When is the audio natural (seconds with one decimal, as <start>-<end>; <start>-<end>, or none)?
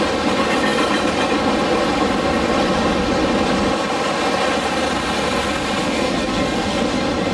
0.0-5.8; 6.8-7.3